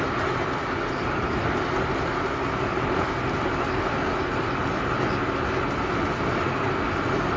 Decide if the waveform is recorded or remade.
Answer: recorded